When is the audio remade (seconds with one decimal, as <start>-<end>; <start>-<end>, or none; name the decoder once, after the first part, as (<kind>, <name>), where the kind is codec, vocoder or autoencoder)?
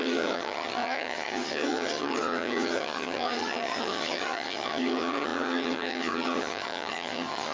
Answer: 0.0-7.5 (vocoder, HiFi-GAN)